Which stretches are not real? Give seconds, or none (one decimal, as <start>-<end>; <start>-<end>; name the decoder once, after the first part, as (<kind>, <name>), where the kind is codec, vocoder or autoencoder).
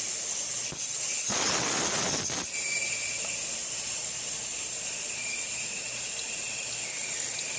3.6-6.7 (vocoder, BigVGAN v2)